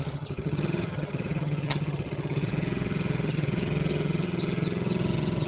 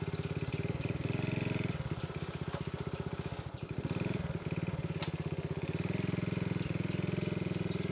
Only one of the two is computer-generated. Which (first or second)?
first